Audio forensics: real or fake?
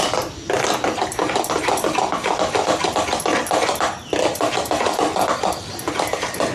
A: real